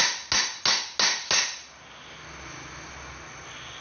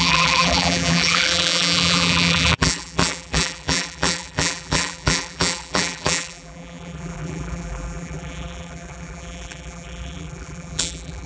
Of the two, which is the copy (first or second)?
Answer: second